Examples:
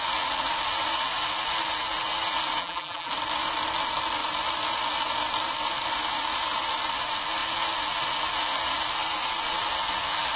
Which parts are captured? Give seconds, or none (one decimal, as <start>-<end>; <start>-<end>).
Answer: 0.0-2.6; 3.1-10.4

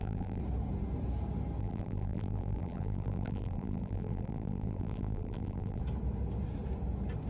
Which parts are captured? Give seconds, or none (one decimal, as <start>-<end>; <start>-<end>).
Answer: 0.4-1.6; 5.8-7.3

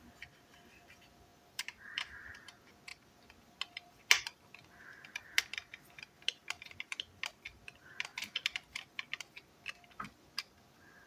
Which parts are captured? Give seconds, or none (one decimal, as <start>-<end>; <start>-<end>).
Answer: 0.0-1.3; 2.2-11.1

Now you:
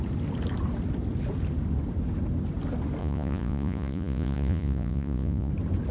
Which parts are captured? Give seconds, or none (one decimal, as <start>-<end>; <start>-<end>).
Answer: 0.0-3.0; 5.5-5.9

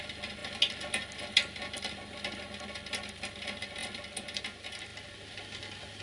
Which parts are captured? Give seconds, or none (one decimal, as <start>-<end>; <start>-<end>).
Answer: 0.0-6.0

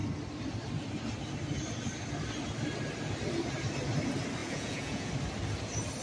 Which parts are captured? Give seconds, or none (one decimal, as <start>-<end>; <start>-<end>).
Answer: 0.0-4.4; 5.1-6.0

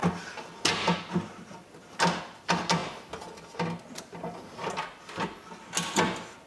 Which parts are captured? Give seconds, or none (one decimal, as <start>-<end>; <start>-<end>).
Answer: 0.0-6.5